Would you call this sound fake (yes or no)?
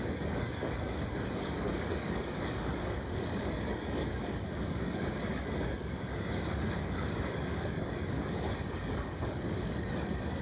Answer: yes